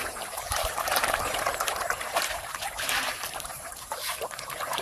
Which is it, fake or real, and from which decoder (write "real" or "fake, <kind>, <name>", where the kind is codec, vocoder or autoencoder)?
fake, vocoder, BigVGAN v2